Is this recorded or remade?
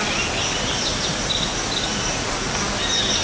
recorded